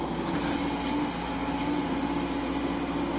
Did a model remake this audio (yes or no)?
no